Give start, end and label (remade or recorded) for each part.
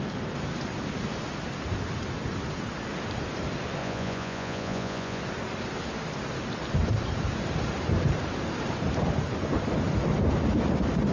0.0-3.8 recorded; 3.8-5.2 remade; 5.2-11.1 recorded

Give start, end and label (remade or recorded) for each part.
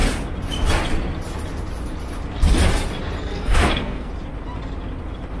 0.0-3.2 recorded; 3.2-4.1 remade; 4.1-5.4 recorded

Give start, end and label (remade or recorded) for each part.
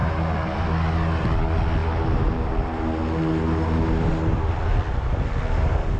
0.0-6.0 recorded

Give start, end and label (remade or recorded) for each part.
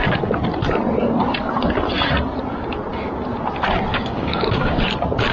0.0-3.9 recorded; 3.9-4.8 remade; 4.8-5.3 recorded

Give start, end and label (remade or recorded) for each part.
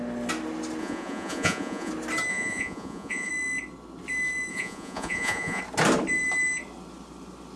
0.0-0.8 recorded; 0.8-1.9 remade; 1.9-2.3 recorded; 2.3-3.3 remade; 3.3-4.5 recorded; 4.5-5.6 remade; 5.6-7.6 recorded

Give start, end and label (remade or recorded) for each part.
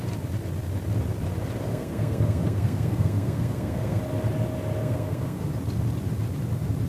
0.0-1.7 recorded; 1.7-4.0 remade; 4.0-4.8 recorded; 4.8-5.4 remade; 5.4-6.9 recorded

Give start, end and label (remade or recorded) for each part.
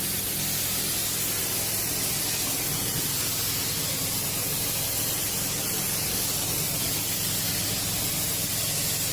0.0-9.1 recorded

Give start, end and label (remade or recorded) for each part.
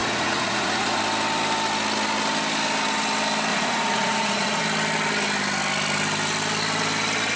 0.0-1.0 remade; 1.0-3.5 recorded; 3.5-4.6 remade; 4.6-7.4 recorded